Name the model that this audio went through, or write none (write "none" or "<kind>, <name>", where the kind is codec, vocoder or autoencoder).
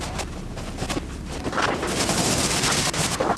vocoder, BigVGAN v2